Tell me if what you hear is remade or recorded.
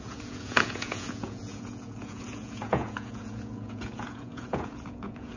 remade